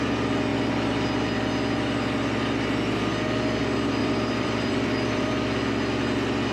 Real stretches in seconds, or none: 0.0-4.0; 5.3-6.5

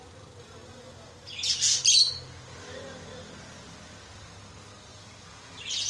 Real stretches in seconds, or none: 0.0-4.9; 5.5-5.9

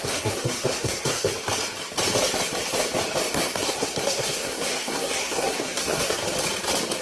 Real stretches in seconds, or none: 1.3-3.3; 6.2-7.0

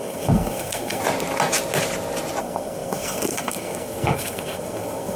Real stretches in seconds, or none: 1.0-2.4

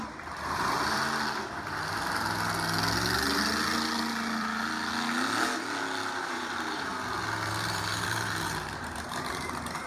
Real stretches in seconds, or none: 1.0-6.2; 6.9-7.5

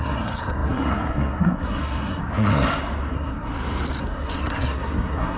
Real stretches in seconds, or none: 2.2-3.1; 3.5-4.0